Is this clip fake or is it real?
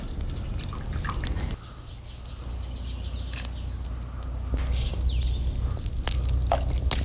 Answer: real